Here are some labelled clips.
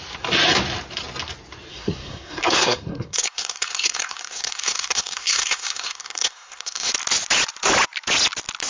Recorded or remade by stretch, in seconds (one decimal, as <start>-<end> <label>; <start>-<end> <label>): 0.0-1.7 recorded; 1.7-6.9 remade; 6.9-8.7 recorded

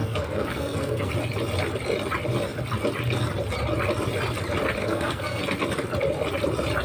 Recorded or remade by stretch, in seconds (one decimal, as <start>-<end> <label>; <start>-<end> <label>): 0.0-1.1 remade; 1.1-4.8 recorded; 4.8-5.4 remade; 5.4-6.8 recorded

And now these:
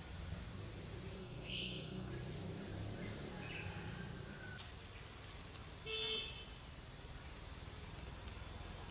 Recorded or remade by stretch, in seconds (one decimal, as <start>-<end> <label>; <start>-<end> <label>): 0.0-1.2 recorded; 1.2-2.1 remade; 2.1-8.9 recorded